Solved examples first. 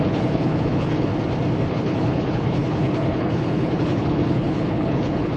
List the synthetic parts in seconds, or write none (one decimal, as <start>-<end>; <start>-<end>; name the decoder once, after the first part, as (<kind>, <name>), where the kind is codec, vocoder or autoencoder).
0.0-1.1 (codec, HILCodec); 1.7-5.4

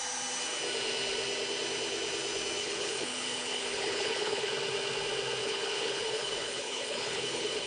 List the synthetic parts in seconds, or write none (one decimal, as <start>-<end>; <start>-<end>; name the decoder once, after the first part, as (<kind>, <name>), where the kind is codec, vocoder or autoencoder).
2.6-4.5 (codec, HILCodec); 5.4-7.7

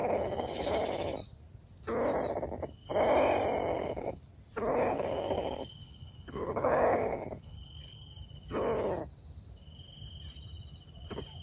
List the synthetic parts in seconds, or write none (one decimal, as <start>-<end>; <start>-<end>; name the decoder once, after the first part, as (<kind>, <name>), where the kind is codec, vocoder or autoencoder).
0.0-0.8 (codec, HILCodec); 3.7-4.2; 4.7-8.1

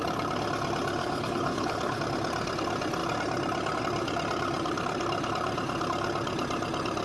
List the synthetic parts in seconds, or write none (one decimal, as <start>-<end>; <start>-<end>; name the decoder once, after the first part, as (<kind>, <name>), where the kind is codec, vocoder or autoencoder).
1.0-2.0 (codec, HILCodec)

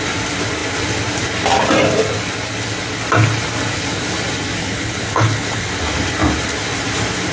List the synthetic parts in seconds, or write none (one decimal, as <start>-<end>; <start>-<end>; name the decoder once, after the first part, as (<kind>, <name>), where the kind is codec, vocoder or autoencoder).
4.6-5.7 (codec, HILCodec)

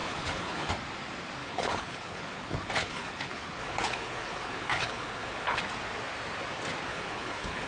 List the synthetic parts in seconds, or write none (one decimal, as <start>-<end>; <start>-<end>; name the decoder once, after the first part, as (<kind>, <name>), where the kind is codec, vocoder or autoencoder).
0.0-0.7 (codec, HILCodec); 1.4-5.6; 6.9-7.7